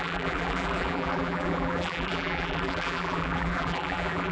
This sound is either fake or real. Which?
fake